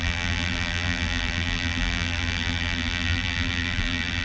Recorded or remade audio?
remade